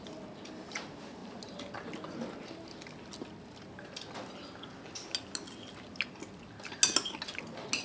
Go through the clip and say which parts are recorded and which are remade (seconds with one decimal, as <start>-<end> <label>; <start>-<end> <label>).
0.0-7.8 recorded